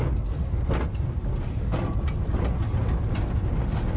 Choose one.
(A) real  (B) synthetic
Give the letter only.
A